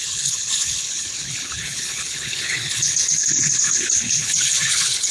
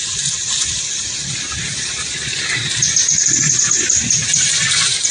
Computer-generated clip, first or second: first